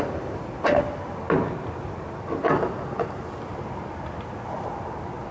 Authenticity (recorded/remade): recorded